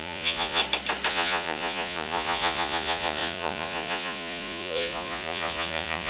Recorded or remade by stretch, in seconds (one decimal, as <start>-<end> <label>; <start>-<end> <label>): 0.0-0.6 remade; 0.6-1.1 recorded; 1.1-6.1 remade